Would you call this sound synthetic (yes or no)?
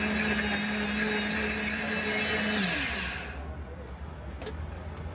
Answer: no